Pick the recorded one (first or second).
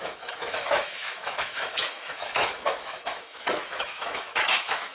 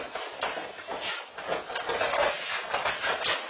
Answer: second